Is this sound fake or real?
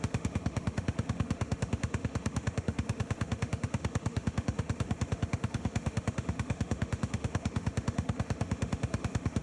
fake